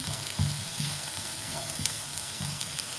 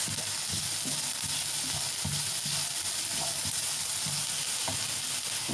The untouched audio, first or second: second